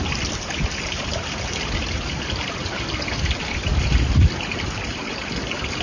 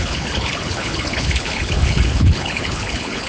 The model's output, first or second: second